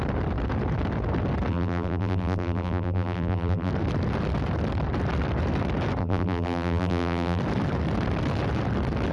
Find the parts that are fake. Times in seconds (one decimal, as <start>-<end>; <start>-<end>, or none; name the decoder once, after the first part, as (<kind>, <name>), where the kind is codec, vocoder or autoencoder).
1.5-3.7 (vocoder, BigVGAN v2); 6.0-7.4